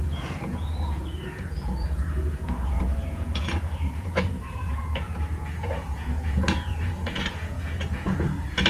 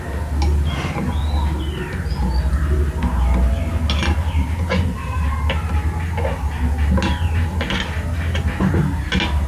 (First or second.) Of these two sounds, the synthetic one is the first